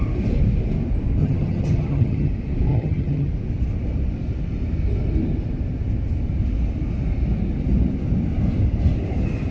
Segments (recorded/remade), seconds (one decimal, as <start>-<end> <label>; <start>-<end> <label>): 0.0-1.2 recorded; 1.2-2.3 remade; 2.3-2.7 recorded; 2.7-3.3 remade; 3.3-9.5 recorded